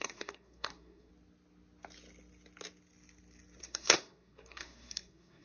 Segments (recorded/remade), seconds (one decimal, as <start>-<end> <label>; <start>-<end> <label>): 0.0-1.1 remade; 1.1-3.6 recorded; 3.6-5.4 remade